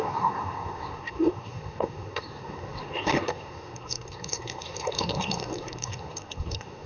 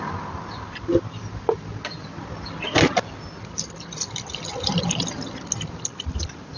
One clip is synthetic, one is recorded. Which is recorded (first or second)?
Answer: second